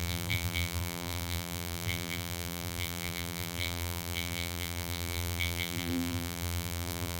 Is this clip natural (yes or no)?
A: no